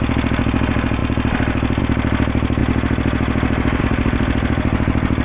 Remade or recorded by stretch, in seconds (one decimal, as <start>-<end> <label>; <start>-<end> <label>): 0.0-5.2 recorded